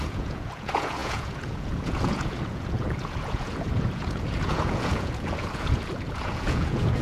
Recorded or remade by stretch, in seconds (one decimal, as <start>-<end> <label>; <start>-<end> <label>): 0.0-7.0 remade